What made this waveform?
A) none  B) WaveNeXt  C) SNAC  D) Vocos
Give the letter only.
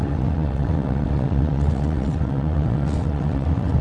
B